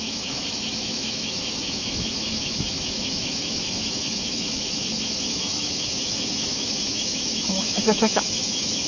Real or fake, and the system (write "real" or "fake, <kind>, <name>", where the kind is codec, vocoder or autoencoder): fake, autoencoder, DAC-VAE